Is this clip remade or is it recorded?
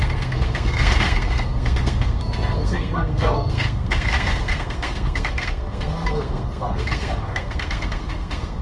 remade